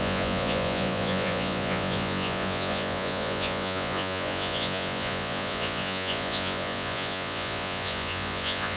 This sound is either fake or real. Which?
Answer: fake